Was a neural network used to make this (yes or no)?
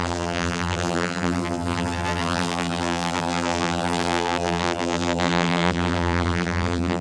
yes